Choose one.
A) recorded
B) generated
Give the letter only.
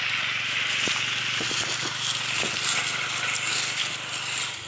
A